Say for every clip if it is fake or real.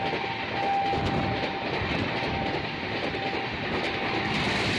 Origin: real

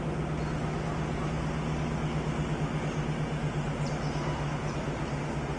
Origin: real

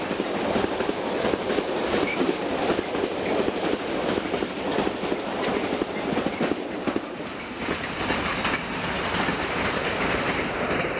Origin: real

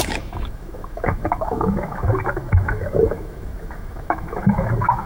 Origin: fake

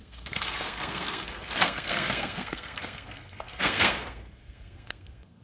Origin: fake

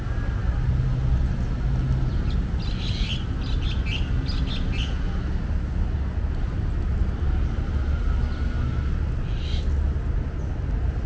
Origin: real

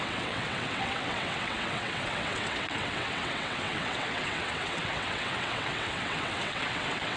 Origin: fake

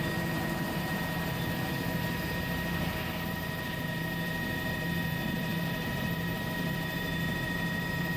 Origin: fake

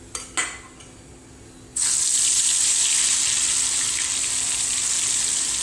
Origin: real